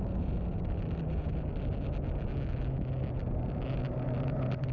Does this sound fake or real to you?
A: real